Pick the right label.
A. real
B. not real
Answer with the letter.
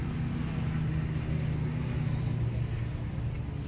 A